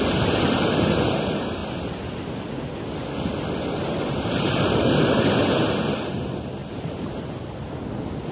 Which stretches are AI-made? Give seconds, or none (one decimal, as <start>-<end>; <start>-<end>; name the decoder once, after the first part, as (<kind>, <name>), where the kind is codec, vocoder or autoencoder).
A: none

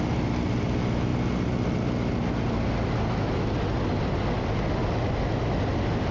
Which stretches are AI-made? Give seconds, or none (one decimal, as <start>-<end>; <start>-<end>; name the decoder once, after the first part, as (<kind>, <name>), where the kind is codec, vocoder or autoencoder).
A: none

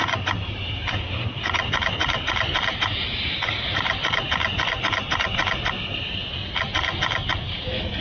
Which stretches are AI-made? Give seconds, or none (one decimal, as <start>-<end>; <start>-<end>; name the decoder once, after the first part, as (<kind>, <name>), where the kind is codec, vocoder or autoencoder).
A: 0.0-4.8 (vocoder, BigVGAN v2)